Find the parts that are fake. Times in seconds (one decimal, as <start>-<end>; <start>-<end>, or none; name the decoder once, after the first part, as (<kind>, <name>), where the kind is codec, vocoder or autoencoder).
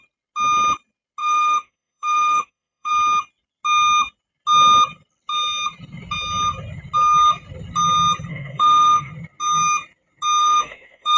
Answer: 1.2-2.9 (autoencoder, DAC-VAE); 8.3-9.1; 10.4-11.2